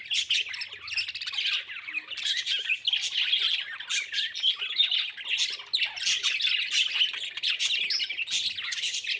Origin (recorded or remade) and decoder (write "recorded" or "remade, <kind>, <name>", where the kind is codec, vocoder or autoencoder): recorded